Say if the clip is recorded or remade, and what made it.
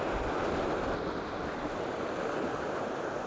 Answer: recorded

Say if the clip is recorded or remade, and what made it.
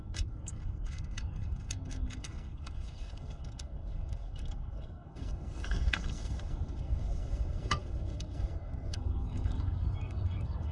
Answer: remade, codec, SNAC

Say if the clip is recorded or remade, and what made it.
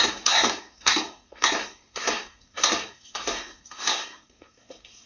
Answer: remade, codec, SNAC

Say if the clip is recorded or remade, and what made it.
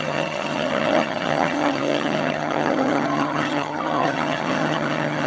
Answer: remade, vocoder, HiFi-GAN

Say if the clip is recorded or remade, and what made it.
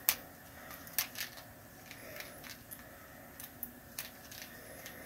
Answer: recorded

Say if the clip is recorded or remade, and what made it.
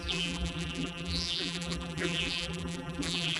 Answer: remade, vocoder, BigVGAN v2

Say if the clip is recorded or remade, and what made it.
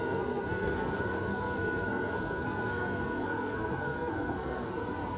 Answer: remade, codec, SNAC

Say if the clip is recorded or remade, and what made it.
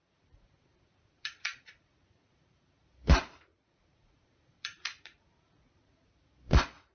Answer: remade, vocoder, Vocos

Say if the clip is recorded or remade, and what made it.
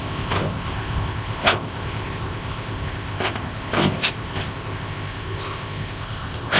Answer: remade, codec, ZipCodec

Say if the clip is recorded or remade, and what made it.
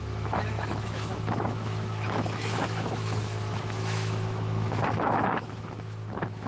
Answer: remade, autoencoder, DAC-VAE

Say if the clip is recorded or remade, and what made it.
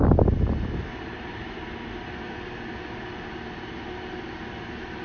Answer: recorded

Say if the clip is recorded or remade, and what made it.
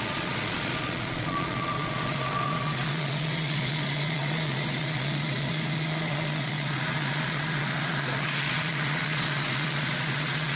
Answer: remade, vocoder, Vocos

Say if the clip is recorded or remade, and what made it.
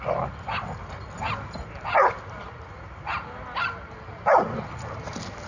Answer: recorded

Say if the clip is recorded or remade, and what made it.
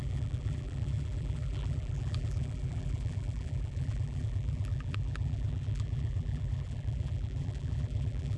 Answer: remade, vocoder, BigVGAN v2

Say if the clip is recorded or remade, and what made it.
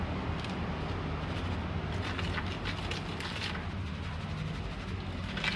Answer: recorded